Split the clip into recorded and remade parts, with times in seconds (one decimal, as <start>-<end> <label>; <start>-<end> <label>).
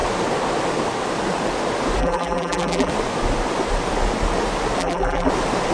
0.0-2.0 recorded; 2.0-2.9 remade; 2.9-4.8 recorded; 4.8-5.3 remade; 5.3-5.7 recorded